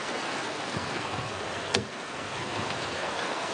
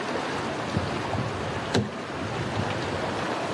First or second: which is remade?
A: first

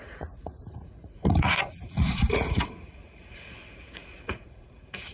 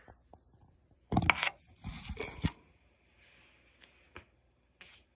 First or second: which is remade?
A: first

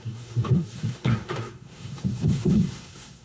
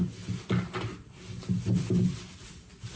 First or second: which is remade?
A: first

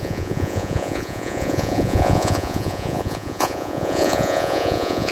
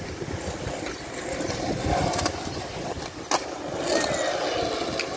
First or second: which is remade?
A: first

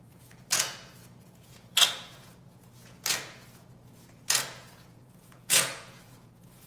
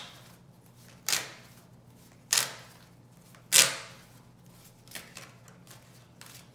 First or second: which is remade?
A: first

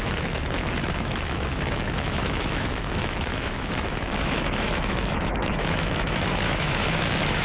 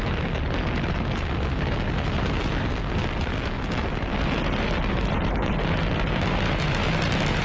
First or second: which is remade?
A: first